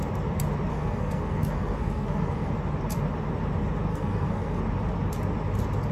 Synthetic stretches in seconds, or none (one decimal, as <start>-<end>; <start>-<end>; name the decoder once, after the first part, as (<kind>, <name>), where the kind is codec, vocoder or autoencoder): 0.7-2.5 (codec, SNAC); 3.9-4.6